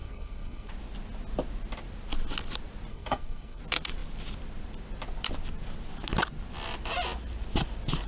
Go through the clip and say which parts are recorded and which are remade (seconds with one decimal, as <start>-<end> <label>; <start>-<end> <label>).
0.0-0.7 remade; 0.7-2.9 recorded; 2.9-3.6 remade; 3.6-8.1 recorded